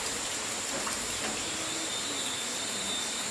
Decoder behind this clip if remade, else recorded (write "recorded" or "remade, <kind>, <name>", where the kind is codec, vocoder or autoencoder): recorded